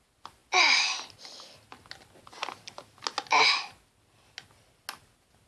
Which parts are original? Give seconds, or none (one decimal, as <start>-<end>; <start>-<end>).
0.0-5.5